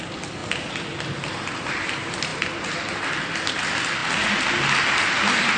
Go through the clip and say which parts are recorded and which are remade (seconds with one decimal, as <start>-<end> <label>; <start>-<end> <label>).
0.0-5.6 recorded

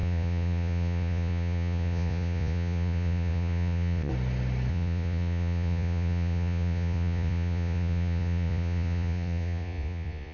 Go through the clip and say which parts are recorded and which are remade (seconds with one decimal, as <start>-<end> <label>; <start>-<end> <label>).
0.0-4.1 remade; 4.1-4.7 recorded; 4.7-10.3 remade

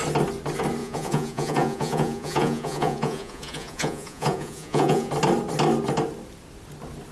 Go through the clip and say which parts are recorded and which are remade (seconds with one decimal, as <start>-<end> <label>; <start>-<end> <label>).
0.0-0.8 recorded; 0.8-5.1 remade; 5.1-7.1 recorded

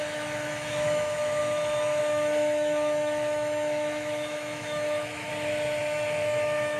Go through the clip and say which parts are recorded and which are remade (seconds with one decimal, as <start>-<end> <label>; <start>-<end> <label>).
0.0-5.3 remade; 5.3-5.8 recorded; 5.8-6.8 remade

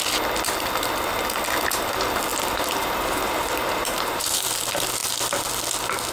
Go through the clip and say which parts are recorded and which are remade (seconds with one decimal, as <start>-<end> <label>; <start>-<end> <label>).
0.0-2.3 recorded; 2.3-4.5 remade; 4.5-6.1 recorded

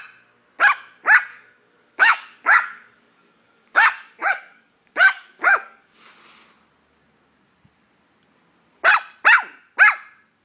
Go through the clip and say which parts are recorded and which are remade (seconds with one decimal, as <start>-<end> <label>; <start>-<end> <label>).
0.0-1.3 recorded; 1.3-6.2 remade; 6.2-10.4 recorded

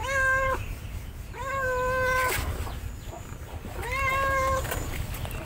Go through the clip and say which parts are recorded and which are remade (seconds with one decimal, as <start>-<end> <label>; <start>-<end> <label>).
0.0-5.5 recorded